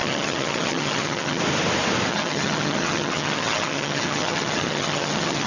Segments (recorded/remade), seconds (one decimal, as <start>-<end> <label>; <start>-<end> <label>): 0.0-1.4 remade; 1.4-2.1 recorded; 2.1-5.5 remade